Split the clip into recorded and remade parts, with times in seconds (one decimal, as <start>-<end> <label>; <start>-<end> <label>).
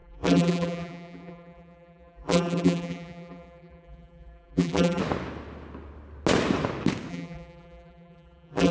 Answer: 0.0-5.0 remade; 5.0-7.1 recorded; 7.1-8.7 remade